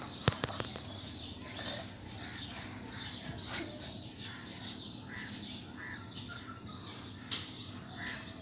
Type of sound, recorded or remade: recorded